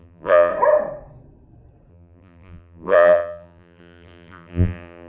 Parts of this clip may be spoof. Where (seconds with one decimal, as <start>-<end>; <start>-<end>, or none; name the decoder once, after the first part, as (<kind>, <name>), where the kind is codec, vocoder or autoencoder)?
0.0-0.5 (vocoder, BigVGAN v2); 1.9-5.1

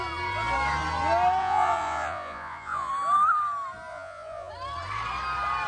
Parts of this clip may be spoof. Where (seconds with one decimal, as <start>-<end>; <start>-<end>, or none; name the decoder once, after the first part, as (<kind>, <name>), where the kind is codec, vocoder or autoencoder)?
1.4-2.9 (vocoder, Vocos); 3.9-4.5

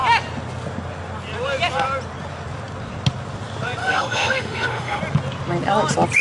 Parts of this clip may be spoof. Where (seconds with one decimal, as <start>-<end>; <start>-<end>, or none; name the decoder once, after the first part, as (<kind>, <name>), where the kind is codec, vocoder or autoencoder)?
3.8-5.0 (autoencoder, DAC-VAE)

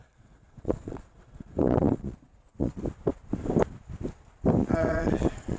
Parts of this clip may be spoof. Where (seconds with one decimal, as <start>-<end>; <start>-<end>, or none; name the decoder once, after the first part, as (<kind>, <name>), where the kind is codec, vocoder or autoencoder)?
0.0-2.8 (vocoder, Vocos); 4.6-5.6

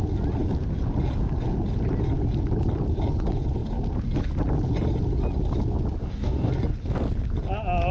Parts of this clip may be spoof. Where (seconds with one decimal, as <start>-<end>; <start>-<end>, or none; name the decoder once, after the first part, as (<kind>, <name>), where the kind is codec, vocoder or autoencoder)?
6.0-6.5 (codec, DAC)

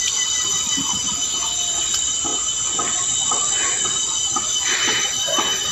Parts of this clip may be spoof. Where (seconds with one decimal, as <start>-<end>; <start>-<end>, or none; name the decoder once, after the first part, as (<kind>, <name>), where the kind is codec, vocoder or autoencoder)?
none